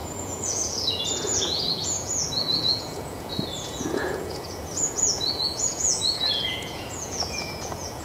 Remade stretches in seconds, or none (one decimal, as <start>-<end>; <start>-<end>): 0.0-8.0